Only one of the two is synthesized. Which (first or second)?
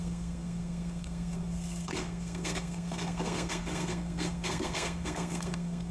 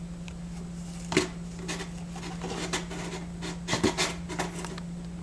first